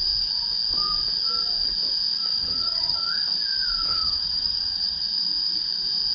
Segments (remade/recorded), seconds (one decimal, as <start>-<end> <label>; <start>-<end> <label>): 0.0-2.4 recorded; 2.4-3.1 remade; 3.1-3.9 recorded; 3.9-5.0 remade; 5.0-6.1 recorded